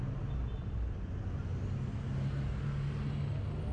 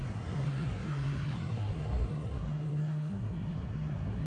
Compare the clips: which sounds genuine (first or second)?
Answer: first